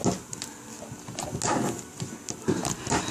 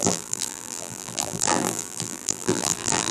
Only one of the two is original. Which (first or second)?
first